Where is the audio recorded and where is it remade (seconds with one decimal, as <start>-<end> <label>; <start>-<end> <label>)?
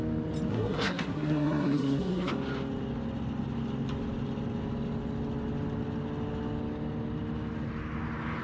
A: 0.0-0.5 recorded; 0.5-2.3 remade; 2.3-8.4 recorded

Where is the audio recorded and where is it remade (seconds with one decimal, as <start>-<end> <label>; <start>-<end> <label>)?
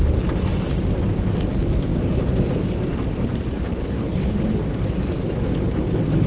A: 0.0-3.7 recorded; 3.7-4.3 remade; 4.3-6.3 recorded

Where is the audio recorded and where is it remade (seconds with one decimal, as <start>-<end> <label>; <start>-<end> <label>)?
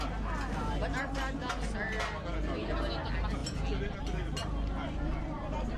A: 0.0-5.8 recorded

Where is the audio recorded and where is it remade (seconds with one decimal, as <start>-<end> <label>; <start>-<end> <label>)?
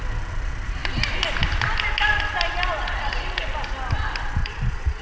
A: 0.0-4.4 recorded; 4.4-5.0 remade